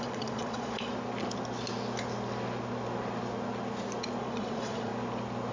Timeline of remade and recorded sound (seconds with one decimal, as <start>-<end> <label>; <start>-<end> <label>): 0.0-0.9 remade; 0.9-4.2 recorded; 4.2-4.9 remade; 4.9-5.5 recorded